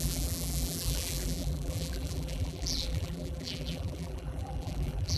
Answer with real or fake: fake